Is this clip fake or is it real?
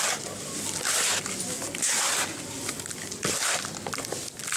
real